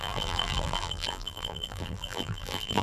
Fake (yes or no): yes